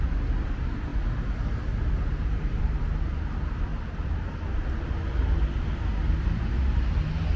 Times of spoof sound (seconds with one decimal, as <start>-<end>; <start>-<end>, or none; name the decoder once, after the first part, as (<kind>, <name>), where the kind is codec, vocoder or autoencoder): none